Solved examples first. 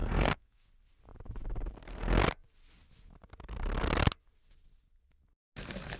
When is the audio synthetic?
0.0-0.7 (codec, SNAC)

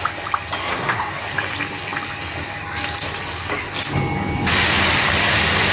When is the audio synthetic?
0.6-1.1 (codec, SNAC)

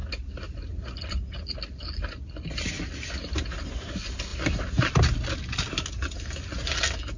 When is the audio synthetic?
none

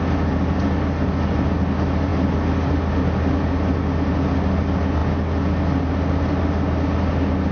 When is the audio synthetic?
none

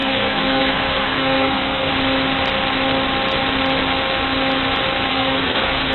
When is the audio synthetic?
0.0-1.9 (codec, SNAC); 5.1-5.9